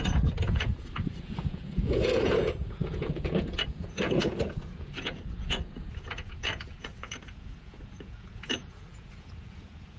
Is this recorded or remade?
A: remade